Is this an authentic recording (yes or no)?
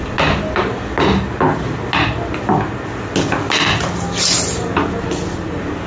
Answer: yes